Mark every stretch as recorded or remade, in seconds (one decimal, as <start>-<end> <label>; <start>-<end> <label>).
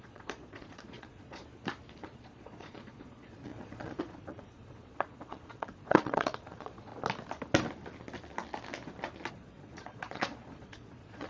0.0-1.4 remade; 1.4-2.0 recorded; 2.0-6.9 remade; 6.9-9.3 recorded; 9.3-11.3 remade